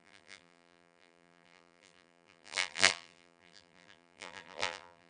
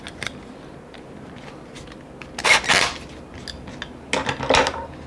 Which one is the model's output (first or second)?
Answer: first